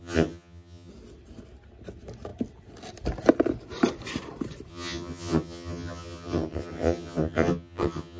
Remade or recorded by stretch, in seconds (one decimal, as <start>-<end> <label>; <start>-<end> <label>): 0.0-0.9 remade; 0.9-4.7 recorded; 4.7-8.2 remade